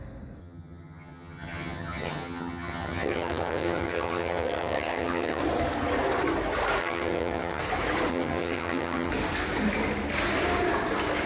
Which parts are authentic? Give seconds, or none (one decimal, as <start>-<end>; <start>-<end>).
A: 0.0-0.4; 5.4-6.8; 7.6-8.1; 9.1-11.3